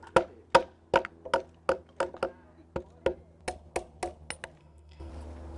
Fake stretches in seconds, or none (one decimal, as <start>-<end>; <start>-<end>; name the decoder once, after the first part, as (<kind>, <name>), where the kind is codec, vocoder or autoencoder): 4.6-5.1 (codec, SNAC)